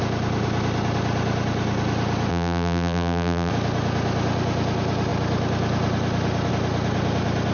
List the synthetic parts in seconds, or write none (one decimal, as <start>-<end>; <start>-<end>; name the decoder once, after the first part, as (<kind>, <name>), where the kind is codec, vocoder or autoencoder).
2.3-3.5 (vocoder, BigVGAN v2)